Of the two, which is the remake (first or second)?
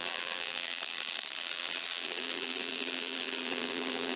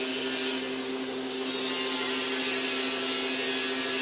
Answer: first